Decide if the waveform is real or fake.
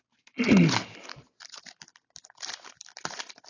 real